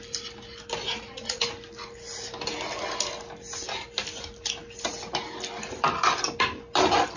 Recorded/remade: recorded